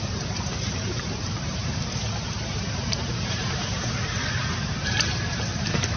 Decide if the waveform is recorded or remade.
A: remade